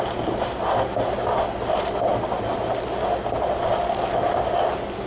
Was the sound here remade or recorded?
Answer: recorded